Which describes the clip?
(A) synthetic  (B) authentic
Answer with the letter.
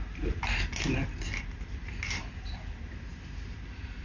B